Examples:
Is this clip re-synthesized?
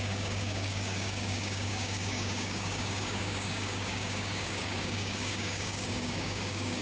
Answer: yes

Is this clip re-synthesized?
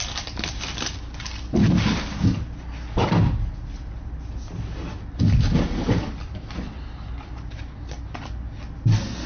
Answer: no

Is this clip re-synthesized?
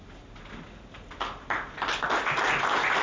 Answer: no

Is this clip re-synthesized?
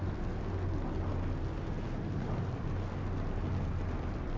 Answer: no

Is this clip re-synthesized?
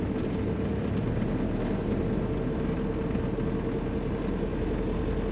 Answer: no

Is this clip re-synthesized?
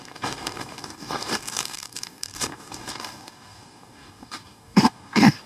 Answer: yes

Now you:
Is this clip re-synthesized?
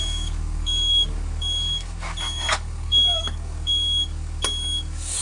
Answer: yes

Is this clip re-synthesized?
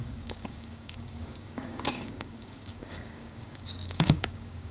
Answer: yes